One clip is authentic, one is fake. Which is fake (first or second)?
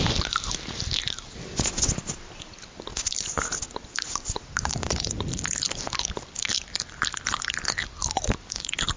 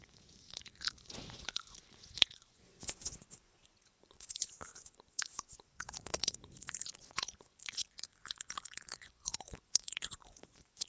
second